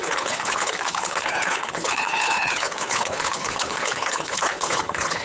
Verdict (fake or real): fake